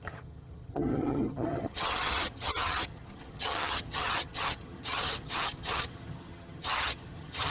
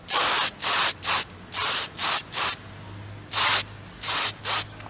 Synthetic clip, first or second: first